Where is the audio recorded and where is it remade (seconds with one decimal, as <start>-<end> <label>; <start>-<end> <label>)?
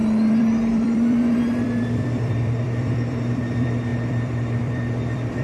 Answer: 0.0-5.4 remade